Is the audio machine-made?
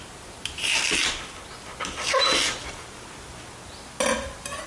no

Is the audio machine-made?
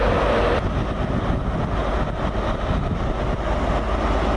no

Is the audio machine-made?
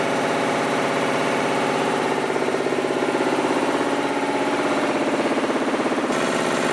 yes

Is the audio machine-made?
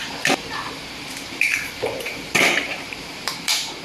yes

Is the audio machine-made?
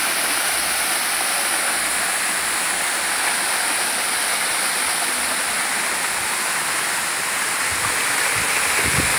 no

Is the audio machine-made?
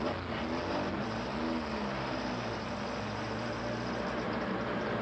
no